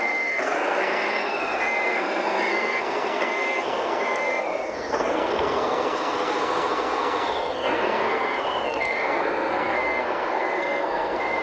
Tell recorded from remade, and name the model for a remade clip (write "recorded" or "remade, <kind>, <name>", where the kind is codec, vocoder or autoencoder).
remade, codec, SNAC